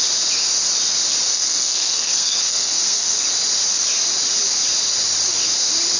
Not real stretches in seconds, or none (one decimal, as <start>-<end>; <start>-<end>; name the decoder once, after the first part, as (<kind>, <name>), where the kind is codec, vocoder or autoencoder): 1.3-3.2 (codec, SNAC)